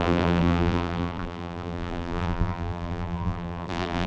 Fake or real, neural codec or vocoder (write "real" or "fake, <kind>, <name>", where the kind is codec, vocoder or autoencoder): fake, vocoder, BigVGAN v2